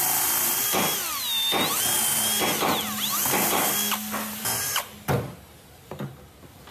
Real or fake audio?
real